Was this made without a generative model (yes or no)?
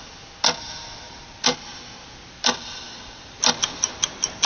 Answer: yes